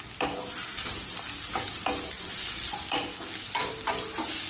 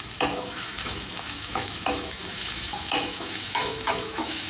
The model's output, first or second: second